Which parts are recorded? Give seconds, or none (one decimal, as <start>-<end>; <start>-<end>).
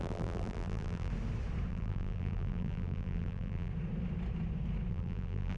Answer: 1.1-1.7; 3.7-4.9